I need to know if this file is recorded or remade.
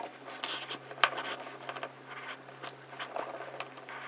recorded